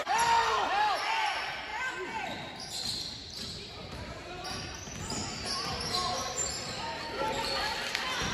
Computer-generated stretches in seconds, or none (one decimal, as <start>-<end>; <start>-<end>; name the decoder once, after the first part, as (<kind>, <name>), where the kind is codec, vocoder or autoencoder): 1.7-2.2 (vocoder, BigVGAN v2); 3.2-4.5; 5.2-6.5

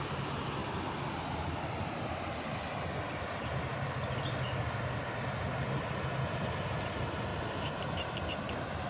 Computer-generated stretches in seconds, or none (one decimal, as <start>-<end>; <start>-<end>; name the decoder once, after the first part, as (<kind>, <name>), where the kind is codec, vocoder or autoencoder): 0.6-2.2 (vocoder, BigVGAN v2); 3.7-6.0; 7.3-8.5

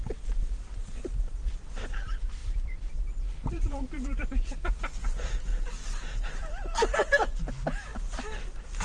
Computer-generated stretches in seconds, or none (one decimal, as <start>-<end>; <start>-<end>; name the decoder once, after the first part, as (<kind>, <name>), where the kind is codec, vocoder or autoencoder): 0.0-5.5 (vocoder, BigVGAN v2); 6.4-8.8

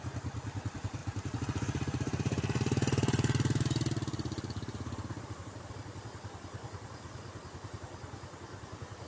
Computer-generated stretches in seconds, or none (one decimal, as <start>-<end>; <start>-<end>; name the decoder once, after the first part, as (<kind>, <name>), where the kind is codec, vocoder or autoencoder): 1.0-5.7 (vocoder, BigVGAN v2)

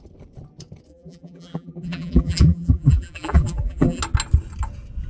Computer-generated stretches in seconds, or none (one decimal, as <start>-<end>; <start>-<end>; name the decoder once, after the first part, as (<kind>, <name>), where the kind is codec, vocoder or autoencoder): 0.9-4.0 (vocoder, BigVGAN v2)